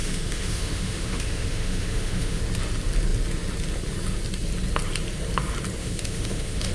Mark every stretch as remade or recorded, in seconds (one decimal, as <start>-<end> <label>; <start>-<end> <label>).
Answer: 0.0-2.4 remade; 2.4-5.8 recorded; 5.8-6.7 remade